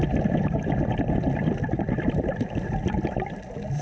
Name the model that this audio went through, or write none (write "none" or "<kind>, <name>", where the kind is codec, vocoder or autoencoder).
none